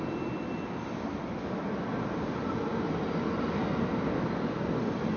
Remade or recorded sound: recorded